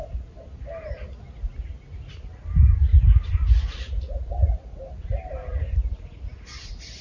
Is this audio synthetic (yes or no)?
no